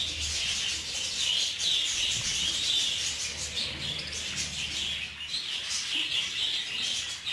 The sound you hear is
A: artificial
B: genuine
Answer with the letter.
B